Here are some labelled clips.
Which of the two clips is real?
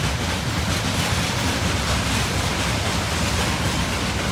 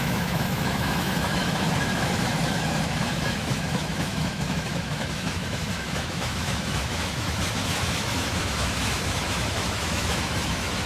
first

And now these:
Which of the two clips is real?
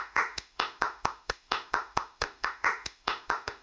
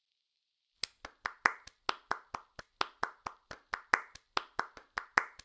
second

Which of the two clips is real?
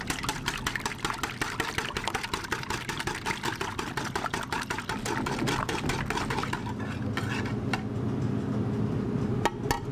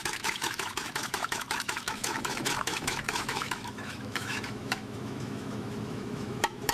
first